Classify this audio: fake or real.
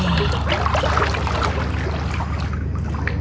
real